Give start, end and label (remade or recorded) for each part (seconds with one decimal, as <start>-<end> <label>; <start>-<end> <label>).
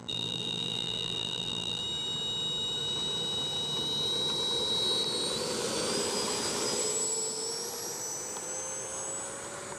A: 0.0-1.8 remade; 1.8-9.8 recorded